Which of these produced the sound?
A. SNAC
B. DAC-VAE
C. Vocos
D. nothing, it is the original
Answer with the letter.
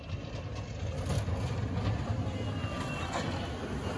D